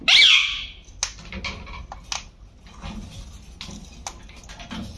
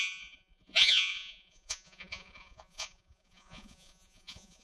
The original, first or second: first